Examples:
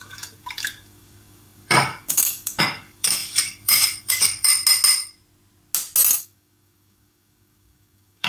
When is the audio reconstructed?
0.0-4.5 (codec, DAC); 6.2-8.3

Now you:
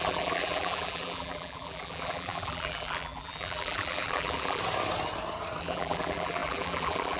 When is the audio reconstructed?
0.0-4.6 (vocoder, BigVGAN v2); 5.6-7.2